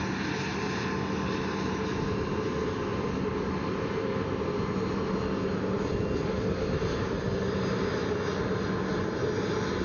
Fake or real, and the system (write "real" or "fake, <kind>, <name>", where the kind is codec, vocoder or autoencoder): real